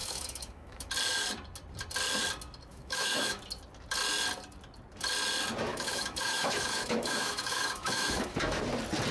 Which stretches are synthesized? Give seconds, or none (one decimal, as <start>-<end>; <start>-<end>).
0.0-0.9; 2.7-3.4; 5.7-8.6